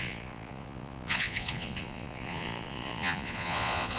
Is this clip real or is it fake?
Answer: fake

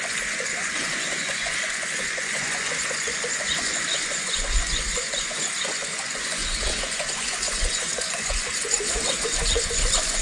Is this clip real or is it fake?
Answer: fake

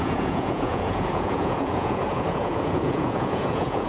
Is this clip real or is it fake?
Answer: fake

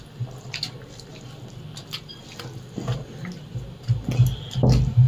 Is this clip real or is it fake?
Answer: real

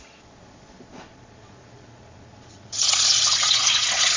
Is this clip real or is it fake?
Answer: fake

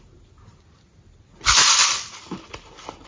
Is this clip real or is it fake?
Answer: real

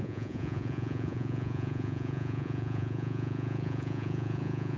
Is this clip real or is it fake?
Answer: fake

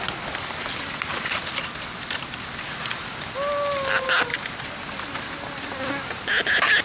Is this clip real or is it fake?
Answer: real